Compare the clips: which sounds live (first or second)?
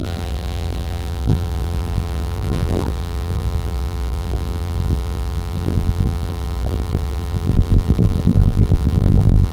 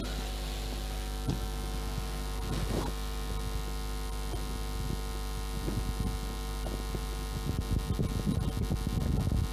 second